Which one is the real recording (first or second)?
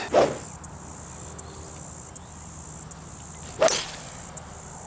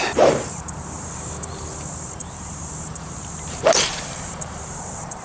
first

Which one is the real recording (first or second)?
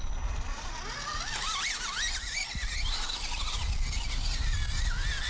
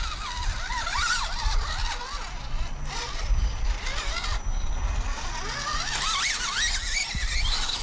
second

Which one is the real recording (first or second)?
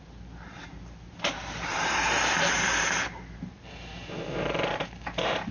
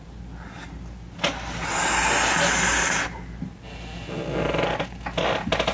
second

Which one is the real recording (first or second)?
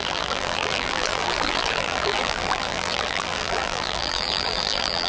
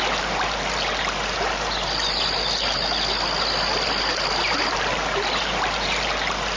second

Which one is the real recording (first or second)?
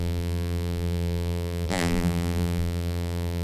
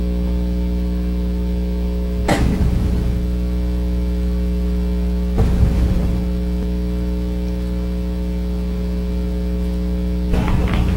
second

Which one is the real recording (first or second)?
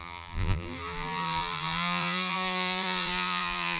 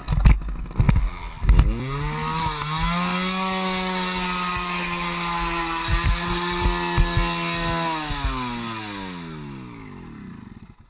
second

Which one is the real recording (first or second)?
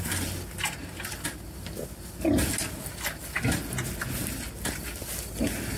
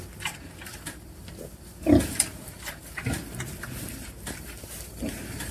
first